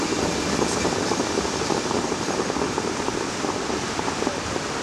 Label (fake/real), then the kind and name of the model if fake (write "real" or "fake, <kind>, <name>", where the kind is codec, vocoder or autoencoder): fake, vocoder, BigVGAN v2